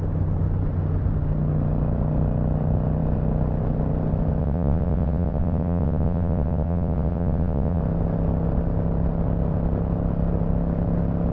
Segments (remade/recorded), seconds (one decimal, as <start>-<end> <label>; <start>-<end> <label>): 0.0-4.4 recorded; 4.4-7.8 remade; 7.8-11.3 recorded